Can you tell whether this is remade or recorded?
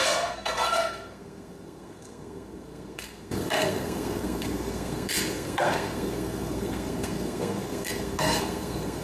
remade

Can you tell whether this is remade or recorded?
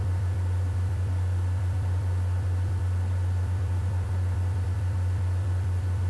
remade